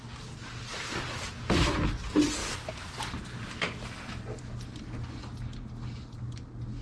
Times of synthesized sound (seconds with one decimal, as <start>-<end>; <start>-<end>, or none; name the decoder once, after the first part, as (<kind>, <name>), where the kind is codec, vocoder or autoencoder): none